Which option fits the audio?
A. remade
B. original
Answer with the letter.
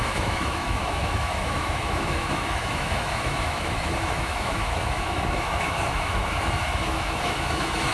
A